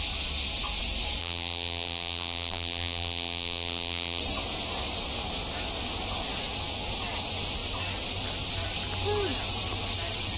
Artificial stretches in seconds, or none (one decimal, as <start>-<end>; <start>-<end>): 1.2-4.2